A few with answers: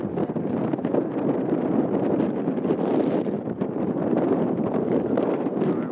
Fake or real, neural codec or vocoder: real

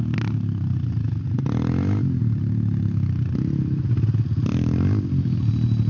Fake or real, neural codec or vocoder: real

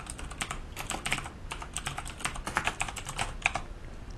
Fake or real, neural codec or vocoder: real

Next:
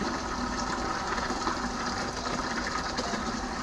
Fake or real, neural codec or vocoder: real